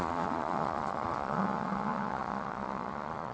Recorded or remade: remade